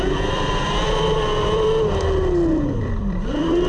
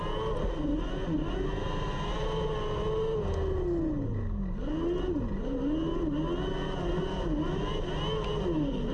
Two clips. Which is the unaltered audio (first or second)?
second